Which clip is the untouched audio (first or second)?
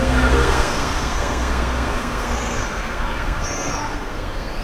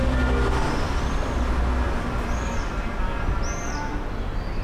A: second